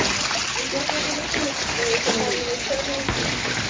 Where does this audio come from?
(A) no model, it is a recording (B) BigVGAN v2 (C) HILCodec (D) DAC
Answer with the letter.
A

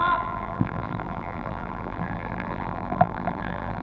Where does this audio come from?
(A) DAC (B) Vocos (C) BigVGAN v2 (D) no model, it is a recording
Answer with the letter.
C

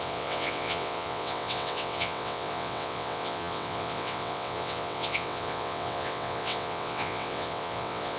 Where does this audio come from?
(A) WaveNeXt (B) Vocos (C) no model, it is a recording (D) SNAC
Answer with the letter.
A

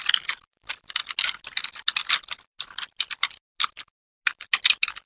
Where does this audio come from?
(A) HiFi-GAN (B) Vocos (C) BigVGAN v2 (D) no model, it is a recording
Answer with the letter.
D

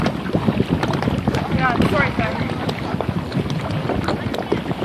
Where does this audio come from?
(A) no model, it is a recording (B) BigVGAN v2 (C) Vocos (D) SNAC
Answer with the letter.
A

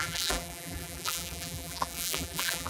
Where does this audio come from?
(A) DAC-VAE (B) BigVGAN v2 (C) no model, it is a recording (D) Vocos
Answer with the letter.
B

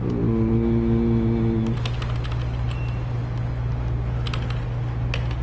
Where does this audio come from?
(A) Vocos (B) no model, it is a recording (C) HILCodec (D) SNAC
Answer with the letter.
B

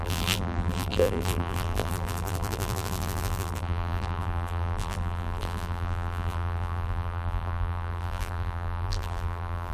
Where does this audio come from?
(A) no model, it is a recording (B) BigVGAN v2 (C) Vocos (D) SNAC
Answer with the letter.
B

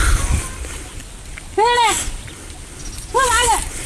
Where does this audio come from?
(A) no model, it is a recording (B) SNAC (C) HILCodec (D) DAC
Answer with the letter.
A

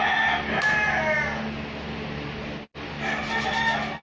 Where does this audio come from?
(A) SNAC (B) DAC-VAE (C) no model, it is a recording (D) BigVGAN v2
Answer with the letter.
C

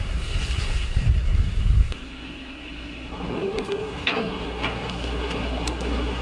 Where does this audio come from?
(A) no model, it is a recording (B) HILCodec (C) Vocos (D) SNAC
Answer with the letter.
D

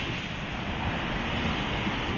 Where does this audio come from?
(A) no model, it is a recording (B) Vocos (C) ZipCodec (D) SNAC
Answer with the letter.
A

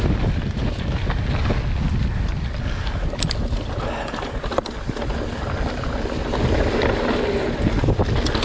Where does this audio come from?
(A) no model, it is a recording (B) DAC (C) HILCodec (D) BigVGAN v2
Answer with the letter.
A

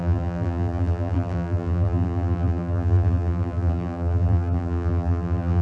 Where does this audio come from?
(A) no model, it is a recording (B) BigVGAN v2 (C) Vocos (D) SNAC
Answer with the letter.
B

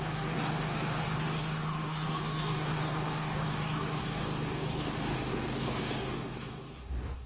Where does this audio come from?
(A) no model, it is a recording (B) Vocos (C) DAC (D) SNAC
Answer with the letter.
C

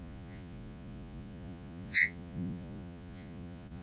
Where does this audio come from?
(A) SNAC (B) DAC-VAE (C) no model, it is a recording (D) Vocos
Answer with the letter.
D